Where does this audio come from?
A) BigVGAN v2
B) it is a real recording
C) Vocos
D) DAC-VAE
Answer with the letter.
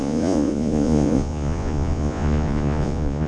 C